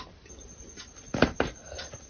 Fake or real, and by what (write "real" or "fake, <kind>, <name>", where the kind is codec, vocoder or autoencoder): real